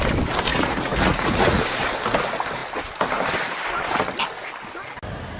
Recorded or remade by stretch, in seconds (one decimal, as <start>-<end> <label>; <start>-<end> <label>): 0.0-0.5 recorded; 0.5-1.6 remade; 1.6-5.4 recorded

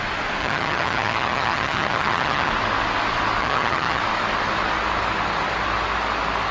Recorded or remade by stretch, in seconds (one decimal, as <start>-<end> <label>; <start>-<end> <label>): 0.0-0.4 recorded; 0.4-2.5 remade; 2.5-3.4 recorded; 3.4-4.0 remade; 4.0-6.5 recorded

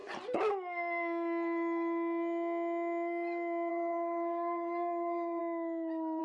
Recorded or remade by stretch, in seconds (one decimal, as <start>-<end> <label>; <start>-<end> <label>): 0.0-3.7 recorded; 3.7-5.4 remade; 5.4-6.2 recorded

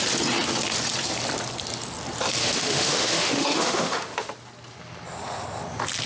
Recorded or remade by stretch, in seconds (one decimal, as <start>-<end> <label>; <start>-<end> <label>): 0.0-2.4 recorded; 2.4-4.3 remade; 4.3-6.1 recorded

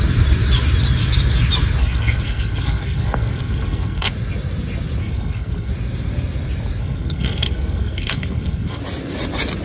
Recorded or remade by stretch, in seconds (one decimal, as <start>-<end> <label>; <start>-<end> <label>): 0.0-1.8 recorded; 1.8-4.1 remade; 4.1-5.0 recorded; 5.0-5.7 remade; 5.7-6.8 recorded; 6.8-8.8 remade; 8.8-9.6 recorded

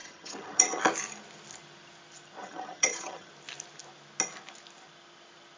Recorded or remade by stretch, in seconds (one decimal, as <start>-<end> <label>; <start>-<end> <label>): 0.0-0.8 remade; 0.8-2.4 recorded; 2.4-3.3 remade; 3.3-5.6 recorded

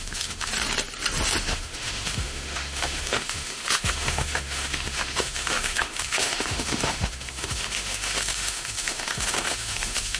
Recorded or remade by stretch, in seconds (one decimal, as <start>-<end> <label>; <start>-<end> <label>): 0.0-0.5 remade; 0.5-1.4 recorded; 1.4-10.2 remade

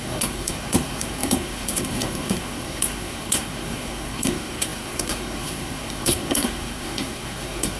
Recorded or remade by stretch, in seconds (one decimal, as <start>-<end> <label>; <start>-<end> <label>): 0.0-7.8 remade